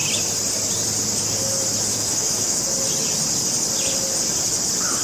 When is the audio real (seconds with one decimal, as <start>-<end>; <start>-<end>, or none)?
0.0-1.9; 2.6-5.0